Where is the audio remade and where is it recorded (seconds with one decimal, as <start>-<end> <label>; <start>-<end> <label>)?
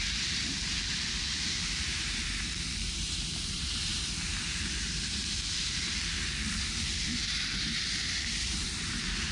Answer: 0.0-9.3 remade